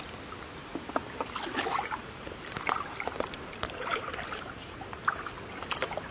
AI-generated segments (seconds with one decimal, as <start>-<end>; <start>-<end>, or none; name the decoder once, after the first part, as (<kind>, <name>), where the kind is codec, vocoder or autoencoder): 0.6-1.3 (vocoder, BigVGAN v2); 2.0-5.1